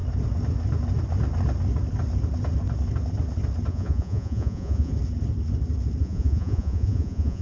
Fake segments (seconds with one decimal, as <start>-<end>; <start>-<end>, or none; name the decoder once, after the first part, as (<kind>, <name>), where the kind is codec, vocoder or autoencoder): 3.7-4.9 (vocoder, Vocos); 6.0-7.4

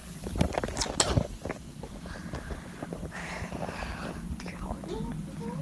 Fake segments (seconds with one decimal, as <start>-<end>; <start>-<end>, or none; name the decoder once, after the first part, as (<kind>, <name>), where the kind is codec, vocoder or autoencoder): none

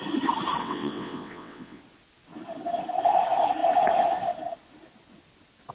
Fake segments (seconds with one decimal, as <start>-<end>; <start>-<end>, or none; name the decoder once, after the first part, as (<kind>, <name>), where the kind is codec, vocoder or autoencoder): 0.6-1.8 (vocoder, WaveNeXt)